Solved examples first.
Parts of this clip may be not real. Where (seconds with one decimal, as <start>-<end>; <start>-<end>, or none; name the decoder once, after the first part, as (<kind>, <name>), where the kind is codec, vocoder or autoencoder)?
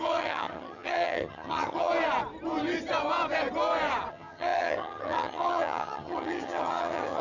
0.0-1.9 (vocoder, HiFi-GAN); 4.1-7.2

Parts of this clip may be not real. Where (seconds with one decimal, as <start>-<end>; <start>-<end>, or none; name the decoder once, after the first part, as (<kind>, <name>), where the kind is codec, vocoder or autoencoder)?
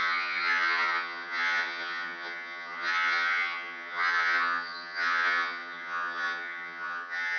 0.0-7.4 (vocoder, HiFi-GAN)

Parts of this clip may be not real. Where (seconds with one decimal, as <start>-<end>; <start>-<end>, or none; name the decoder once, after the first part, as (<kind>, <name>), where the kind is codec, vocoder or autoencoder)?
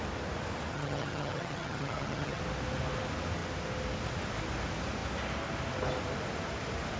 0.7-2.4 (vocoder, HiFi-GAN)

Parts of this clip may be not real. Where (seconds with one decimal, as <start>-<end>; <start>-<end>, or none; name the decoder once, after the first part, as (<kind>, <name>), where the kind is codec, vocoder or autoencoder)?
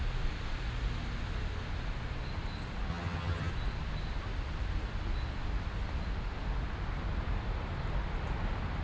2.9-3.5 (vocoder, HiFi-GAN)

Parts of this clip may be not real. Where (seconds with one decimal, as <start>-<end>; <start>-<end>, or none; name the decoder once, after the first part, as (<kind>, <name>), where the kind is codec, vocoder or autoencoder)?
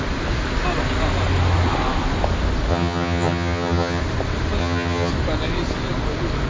2.7-4.0 (vocoder, HiFi-GAN); 4.6-5.1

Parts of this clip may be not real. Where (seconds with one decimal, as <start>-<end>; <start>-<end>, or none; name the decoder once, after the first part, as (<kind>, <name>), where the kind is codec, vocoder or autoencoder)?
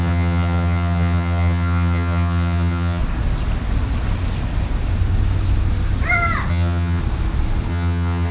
0.0-3.0 (vocoder, HiFi-GAN); 6.5-7.0; 7.7-8.3